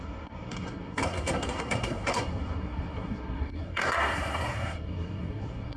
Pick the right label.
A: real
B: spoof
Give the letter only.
B